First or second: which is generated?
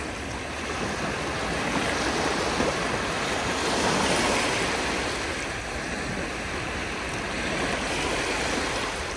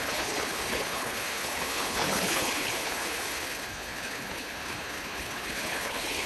second